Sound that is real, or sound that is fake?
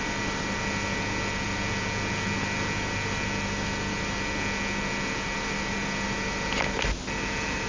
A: real